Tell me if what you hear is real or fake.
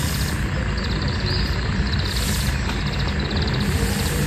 real